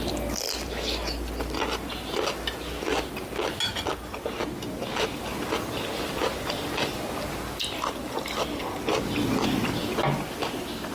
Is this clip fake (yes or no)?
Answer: no